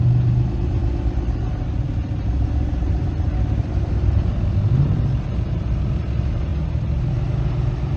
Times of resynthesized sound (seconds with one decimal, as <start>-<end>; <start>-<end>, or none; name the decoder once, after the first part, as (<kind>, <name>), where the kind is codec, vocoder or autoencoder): 2.7-4.3 (vocoder, BigVGAN v2)